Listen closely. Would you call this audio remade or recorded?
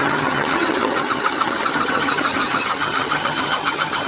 remade